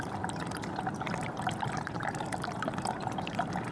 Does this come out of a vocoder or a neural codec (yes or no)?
no